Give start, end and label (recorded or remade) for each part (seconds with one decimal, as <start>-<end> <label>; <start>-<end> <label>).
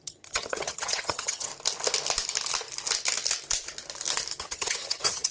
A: 0.0-1.5 remade; 1.5-4.4 recorded; 4.4-5.3 remade